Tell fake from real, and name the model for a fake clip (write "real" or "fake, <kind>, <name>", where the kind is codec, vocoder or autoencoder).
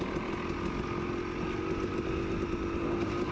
real